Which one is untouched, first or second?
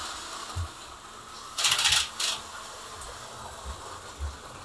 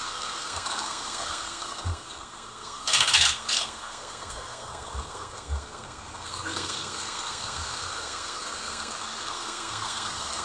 first